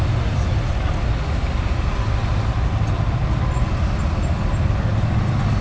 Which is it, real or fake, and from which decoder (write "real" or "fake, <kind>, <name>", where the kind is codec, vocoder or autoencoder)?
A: real